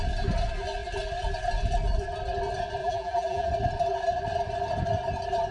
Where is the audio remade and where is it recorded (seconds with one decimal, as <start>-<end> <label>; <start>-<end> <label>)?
0.0-2.8 recorded; 2.8-3.5 remade; 3.5-5.5 recorded